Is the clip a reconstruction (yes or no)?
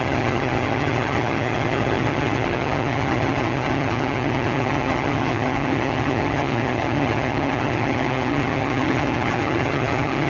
yes